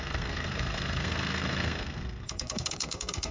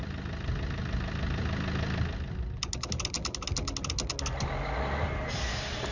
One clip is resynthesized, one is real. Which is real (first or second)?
second